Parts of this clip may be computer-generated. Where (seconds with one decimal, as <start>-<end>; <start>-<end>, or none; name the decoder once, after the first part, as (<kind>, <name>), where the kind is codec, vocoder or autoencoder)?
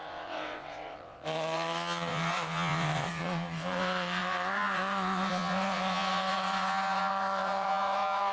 0.0-8.3 (vocoder, WaveNeXt)